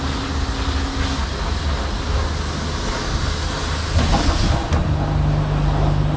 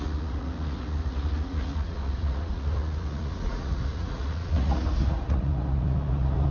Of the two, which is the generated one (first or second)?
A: second